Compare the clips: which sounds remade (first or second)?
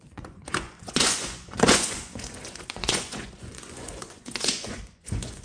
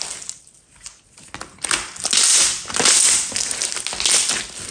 first